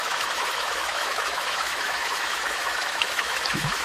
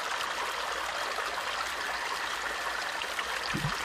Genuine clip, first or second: second